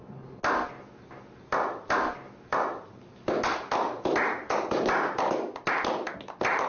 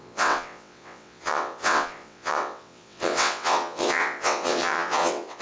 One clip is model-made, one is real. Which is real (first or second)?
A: first